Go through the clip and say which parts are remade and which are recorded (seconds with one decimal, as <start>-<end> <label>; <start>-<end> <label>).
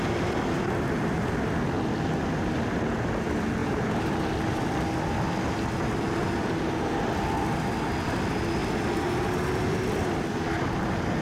0.0-3.6 recorded; 3.6-4.3 remade; 4.3-11.2 recorded